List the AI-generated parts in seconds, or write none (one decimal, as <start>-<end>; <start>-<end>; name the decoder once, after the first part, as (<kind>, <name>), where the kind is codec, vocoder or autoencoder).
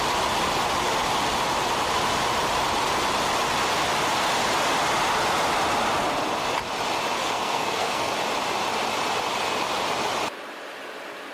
7.2-8.1 (codec, SNAC)